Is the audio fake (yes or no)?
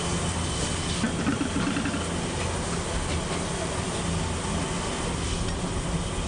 no